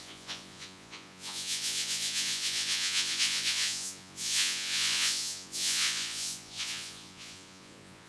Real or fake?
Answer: fake